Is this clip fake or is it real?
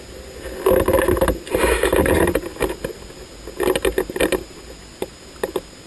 real